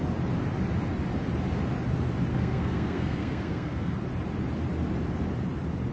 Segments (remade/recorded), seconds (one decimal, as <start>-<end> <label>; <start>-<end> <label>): 0.0-2.3 recorded; 2.3-3.9 remade; 3.9-5.9 recorded